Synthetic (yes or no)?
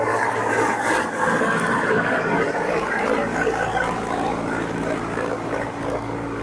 yes